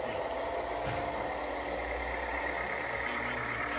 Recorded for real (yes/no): yes